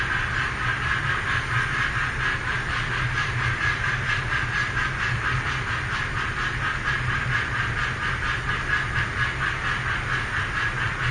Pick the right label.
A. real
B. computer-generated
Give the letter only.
A